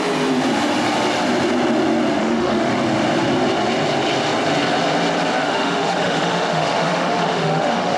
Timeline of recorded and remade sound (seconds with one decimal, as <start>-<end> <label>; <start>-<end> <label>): 0.0-2.2 recorded; 2.2-2.7 remade; 2.7-5.4 recorded; 5.4-8.0 remade